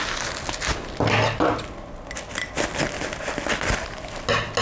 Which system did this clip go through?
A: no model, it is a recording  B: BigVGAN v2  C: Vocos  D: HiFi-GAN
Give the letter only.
A